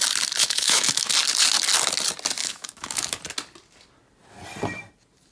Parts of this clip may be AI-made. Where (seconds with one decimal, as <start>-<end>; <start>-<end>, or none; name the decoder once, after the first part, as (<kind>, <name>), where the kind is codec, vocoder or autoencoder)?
0.4-1.1 (autoencoder, DAC-VAE); 2.4-3.2